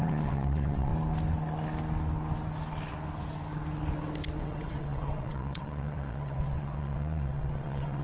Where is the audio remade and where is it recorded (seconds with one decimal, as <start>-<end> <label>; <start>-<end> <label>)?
0.0-0.9 remade; 0.9-4.4 recorded; 4.4-8.0 remade